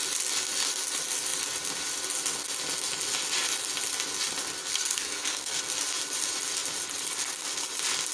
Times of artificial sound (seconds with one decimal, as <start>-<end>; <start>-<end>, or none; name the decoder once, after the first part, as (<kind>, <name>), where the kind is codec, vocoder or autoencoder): 4.7-5.6 (codec, SNAC)